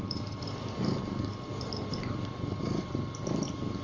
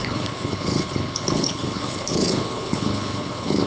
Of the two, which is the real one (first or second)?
first